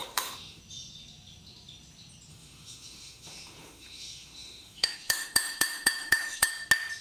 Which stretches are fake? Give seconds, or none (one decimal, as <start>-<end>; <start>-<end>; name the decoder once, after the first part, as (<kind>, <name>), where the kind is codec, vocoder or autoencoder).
0.0-0.6 (autoencoder, DAC-VAE); 2.3-6.5